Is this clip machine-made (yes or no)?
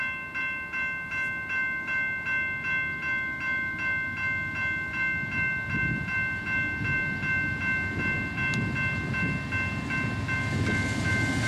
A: no